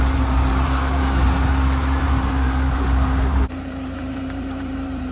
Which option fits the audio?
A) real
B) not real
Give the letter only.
B